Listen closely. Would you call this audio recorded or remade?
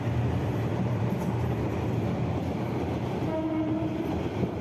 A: recorded